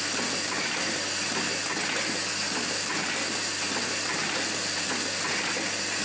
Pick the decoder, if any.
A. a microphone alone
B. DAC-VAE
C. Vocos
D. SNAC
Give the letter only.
A